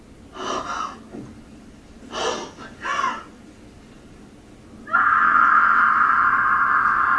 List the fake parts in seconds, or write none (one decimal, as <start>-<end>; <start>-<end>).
5.2-5.8